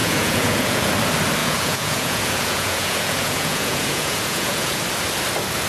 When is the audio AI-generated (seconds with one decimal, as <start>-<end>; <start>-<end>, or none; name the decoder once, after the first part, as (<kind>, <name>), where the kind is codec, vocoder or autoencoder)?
0.0-0.9 (vocoder, Vocos); 1.4-4.8